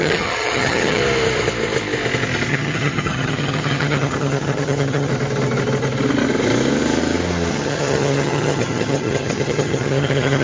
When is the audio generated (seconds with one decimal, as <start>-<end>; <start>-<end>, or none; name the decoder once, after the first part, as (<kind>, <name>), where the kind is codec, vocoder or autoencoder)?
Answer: 0.0-1.0 (vocoder, HiFi-GAN); 2.5-5.1; 7.5-10.4